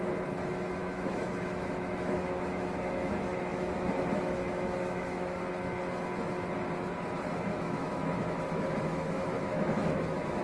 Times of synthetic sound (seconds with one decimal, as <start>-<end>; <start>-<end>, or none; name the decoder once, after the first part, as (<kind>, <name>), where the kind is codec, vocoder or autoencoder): 0.8-5.4 (autoencoder, DAC-VAE); 7.5-10.4